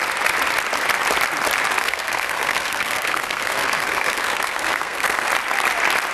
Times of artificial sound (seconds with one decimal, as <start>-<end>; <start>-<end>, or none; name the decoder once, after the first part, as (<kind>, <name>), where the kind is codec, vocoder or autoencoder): 1.8-5.3 (codec, SNAC)